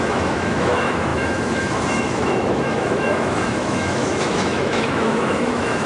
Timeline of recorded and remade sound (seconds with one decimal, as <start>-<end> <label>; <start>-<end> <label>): 0.0-5.9 remade